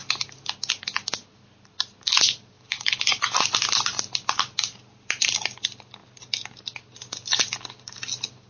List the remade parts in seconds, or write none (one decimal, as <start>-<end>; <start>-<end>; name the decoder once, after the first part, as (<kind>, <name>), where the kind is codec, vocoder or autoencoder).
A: none

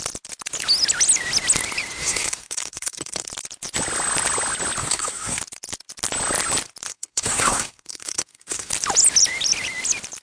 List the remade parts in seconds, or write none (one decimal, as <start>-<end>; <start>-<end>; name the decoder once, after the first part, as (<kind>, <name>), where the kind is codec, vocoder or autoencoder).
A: 2.0-3.3 (codec, SNAC); 4.8-5.4; 6.9-8.7

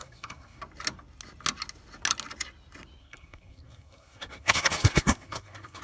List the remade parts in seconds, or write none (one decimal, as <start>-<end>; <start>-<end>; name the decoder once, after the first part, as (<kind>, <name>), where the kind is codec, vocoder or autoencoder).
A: 0.0-0.6 (codec, SNAC); 3.0-5.8

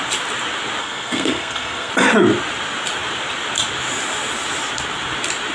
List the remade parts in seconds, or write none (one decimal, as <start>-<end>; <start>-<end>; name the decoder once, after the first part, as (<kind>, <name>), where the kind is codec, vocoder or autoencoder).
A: 0.8-1.9 (codec, SNAC)